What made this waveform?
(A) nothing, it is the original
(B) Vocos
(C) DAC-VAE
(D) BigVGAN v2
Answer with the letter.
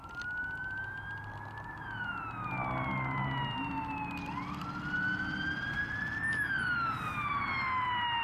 A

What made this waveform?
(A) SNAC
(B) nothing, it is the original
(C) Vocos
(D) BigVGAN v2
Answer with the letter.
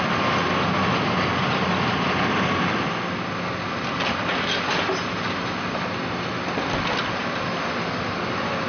B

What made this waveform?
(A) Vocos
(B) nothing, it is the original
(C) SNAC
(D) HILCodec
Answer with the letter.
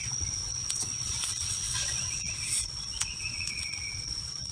A